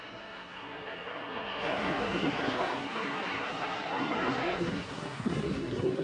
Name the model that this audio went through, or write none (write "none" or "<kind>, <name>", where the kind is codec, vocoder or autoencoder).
codec, SNAC